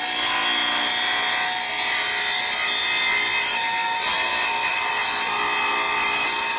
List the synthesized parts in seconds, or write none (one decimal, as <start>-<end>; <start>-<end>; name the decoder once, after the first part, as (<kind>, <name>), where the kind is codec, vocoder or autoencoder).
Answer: none